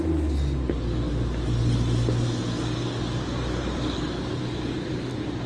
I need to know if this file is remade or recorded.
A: recorded